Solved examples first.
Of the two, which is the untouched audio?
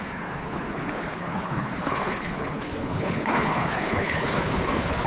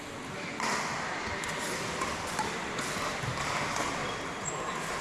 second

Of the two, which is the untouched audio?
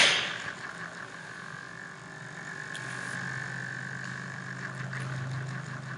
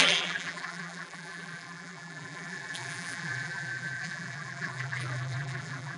first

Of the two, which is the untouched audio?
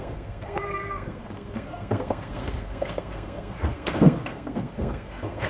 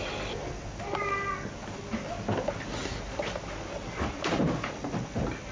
second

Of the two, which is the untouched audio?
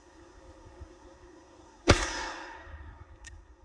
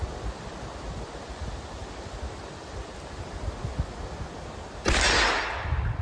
second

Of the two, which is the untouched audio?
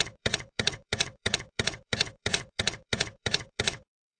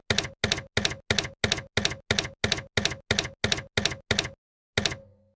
second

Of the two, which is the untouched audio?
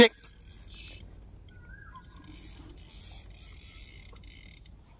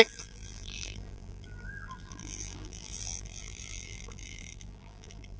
first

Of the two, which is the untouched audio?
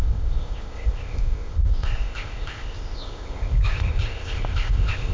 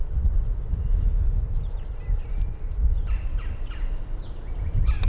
second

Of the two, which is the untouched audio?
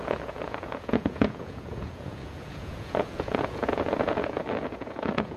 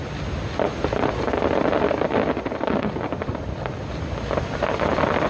second